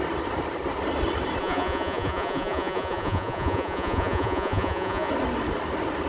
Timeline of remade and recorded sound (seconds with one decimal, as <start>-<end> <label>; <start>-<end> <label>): 0.0-1.4 recorded; 1.4-5.1 remade; 5.1-6.1 recorded